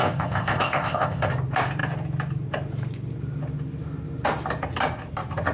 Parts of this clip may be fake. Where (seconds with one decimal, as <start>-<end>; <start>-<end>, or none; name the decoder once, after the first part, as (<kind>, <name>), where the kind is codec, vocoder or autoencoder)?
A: 0.0-1.3 (codec, ZipCodec)

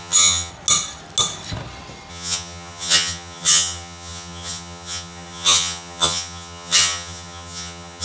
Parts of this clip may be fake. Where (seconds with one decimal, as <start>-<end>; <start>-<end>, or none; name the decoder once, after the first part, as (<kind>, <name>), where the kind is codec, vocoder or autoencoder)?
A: 0.0-0.5 (vocoder, HiFi-GAN); 2.1-8.0

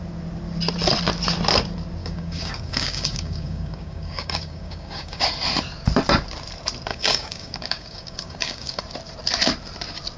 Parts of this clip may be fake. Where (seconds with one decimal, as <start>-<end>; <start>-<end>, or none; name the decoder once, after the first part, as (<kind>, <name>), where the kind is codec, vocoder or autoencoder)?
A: 2.0-5.2 (codec, DAC); 6.9-8.8

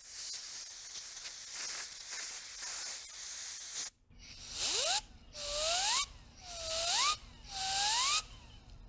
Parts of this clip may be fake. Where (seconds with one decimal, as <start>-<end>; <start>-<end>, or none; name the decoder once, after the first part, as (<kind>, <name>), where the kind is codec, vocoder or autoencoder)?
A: none

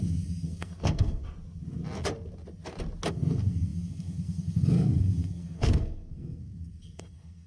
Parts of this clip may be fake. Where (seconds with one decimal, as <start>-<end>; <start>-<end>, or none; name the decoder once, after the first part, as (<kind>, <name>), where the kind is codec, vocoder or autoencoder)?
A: 0.0-1.2 (codec, SNAC); 3.1-7.5

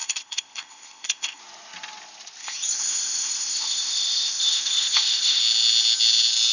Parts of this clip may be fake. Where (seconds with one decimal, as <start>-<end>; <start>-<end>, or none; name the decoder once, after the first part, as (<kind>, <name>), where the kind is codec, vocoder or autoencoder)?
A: 0.0-1.4 (codec, ZipCodec); 2.4-5.4

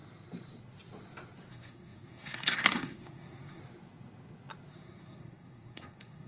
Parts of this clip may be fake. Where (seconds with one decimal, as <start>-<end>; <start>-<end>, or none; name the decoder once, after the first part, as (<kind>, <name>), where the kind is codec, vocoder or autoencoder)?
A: 1.5-3.6 (codec, SNAC); 4.7-6.3